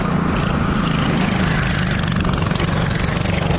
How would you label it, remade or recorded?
recorded